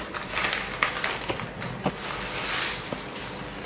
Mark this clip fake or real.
real